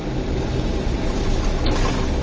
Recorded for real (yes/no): yes